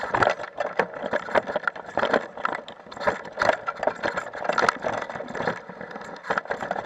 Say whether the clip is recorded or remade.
recorded